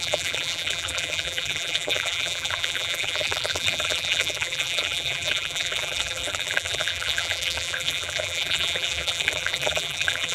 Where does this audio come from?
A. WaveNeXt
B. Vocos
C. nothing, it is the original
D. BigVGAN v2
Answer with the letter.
D